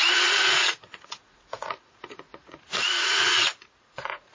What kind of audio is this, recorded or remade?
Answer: remade